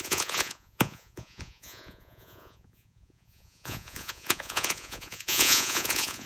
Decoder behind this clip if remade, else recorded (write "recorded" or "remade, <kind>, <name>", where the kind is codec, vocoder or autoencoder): remade, vocoder, Vocos